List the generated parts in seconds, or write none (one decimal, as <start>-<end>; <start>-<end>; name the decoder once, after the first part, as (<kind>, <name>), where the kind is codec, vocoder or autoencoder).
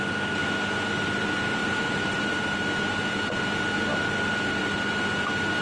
1.6-2.3 (vocoder, BigVGAN v2)